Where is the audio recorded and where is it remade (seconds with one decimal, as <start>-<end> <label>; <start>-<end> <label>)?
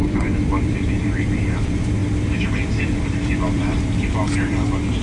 0.0-2.0 remade; 2.0-2.8 recorded; 2.8-5.0 remade